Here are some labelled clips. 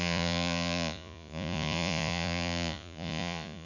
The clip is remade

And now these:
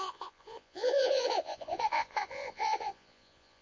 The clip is remade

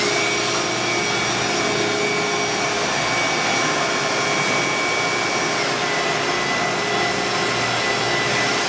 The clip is recorded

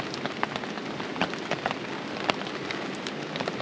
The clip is recorded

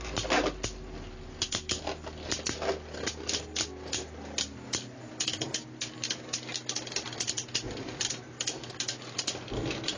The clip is recorded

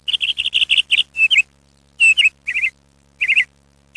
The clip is recorded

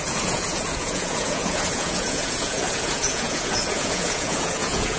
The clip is remade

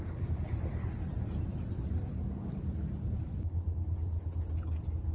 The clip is recorded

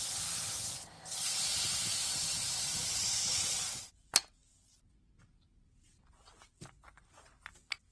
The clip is recorded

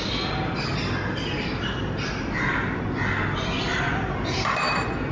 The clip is recorded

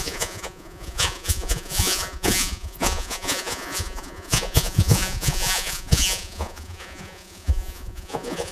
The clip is remade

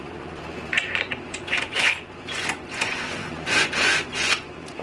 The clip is remade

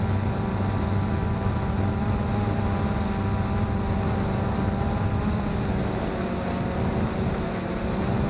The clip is recorded